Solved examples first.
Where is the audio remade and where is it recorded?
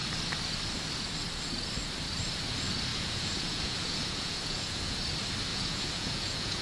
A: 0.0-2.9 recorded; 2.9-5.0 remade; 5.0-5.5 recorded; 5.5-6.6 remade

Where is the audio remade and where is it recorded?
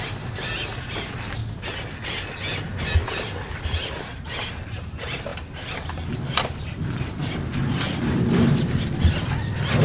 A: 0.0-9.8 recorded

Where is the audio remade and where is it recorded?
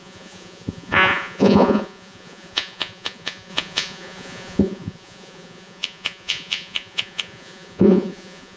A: 0.0-8.6 remade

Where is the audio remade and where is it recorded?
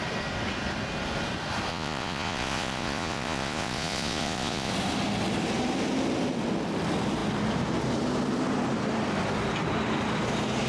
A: 0.0-1.7 recorded; 1.7-4.7 remade; 4.7-10.7 recorded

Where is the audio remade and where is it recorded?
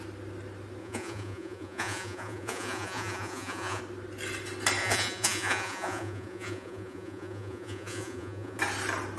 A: 0.0-0.8 recorded; 0.8-3.8 remade; 3.8-4.8 recorded; 4.8-8.6 remade; 8.6-9.2 recorded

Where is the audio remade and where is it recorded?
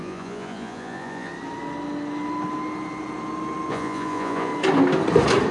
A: 0.0-1.3 remade; 1.3-3.7 recorded; 3.7-4.5 remade; 4.5-5.5 recorded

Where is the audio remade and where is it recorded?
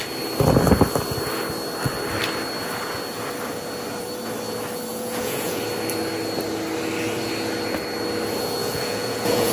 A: 0.0-4.9 recorded; 4.9-5.6 remade; 5.6-8.6 recorded; 8.6-9.5 remade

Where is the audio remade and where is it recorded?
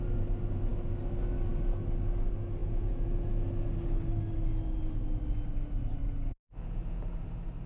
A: 0.0-2.6 recorded; 2.6-3.5 remade; 3.5-6.0 recorded; 6.0-7.2 remade; 7.2-7.7 recorded